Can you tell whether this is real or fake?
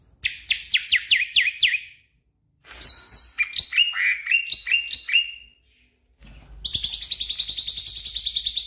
real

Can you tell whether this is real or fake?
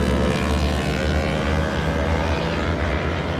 real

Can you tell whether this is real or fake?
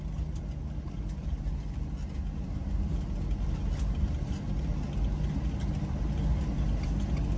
real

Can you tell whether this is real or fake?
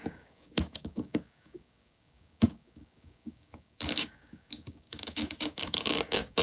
fake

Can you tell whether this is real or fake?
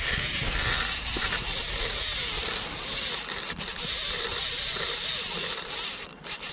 real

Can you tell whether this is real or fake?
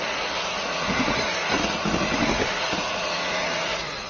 fake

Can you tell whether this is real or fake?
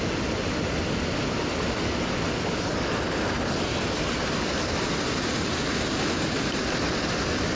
real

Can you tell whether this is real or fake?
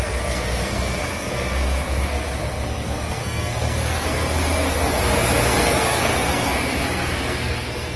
fake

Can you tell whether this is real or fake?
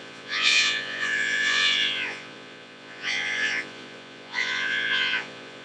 fake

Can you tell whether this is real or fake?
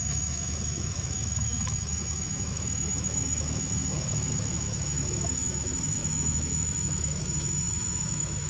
fake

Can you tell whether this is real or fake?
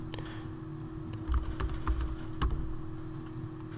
real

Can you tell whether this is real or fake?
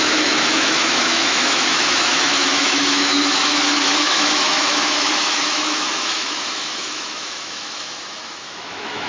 fake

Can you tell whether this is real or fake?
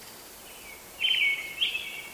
real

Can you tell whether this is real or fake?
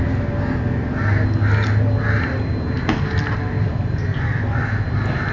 real